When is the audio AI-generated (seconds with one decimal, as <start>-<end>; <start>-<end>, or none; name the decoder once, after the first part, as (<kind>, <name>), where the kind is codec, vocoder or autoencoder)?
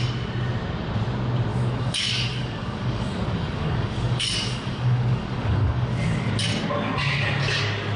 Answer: 1.5-6.3 (codec, DAC)